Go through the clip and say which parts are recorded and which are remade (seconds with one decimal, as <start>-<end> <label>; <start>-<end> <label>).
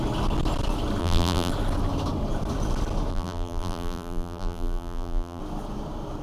0.0-1.0 recorded; 1.0-1.5 remade; 1.5-3.1 recorded; 3.1-5.4 remade; 5.4-6.2 recorded